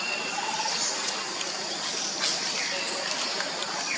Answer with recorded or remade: recorded